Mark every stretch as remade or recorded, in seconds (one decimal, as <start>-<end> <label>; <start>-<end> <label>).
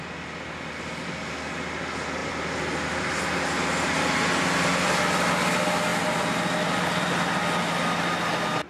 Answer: 0.0-8.7 recorded